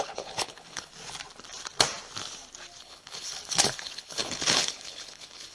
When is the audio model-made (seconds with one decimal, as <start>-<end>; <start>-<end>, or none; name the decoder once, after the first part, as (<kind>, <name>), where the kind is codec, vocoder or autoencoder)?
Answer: 0.0-0.9 (codec, HILCodec); 2.8-5.5

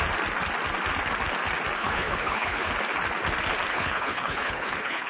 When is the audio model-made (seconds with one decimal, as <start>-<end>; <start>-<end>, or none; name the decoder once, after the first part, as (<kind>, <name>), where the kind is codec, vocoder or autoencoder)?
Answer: 1.8-2.7 (codec, HILCodec); 3.7-5.1

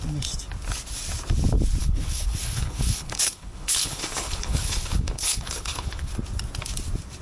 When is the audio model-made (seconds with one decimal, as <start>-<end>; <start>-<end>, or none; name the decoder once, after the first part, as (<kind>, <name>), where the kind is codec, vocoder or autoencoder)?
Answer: 1.8-6.1 (codec, HILCodec)

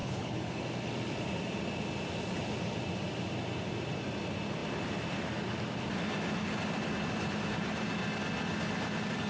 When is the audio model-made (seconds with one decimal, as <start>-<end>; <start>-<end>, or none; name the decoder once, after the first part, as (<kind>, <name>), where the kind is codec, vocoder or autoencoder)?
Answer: 0.0-0.6 (codec, HILCodec)

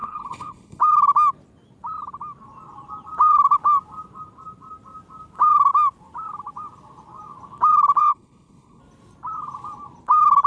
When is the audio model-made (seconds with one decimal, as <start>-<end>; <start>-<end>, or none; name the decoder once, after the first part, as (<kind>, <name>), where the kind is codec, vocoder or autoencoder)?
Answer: 0.0-0.8 (codec, HILCodec); 8.0-8.8

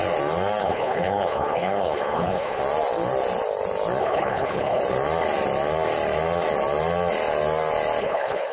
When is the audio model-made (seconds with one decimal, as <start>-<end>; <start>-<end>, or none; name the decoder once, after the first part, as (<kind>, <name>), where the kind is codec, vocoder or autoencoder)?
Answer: 0.6-2.6 (codec, HILCodec); 4.0-4.8; 8.0-8.5

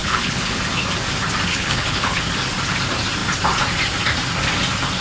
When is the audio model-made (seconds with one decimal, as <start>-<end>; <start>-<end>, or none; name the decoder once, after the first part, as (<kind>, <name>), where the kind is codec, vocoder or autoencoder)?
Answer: 0.0-0.6 (codec, HILCodec); 1.5-2.2

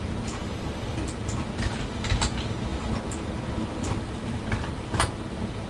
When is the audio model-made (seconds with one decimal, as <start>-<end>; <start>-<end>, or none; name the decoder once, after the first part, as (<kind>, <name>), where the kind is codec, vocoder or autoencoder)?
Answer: none